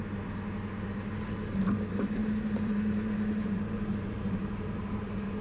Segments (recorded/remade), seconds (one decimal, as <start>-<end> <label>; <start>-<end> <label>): 0.0-2.2 recorded; 2.2-5.4 remade